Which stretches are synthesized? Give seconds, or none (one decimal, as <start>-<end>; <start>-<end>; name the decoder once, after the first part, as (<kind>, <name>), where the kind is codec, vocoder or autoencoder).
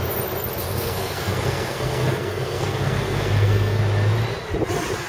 0.7-3.8 (codec, SNAC)